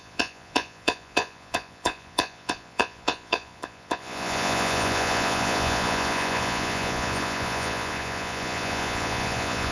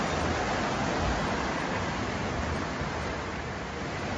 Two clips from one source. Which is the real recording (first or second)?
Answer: second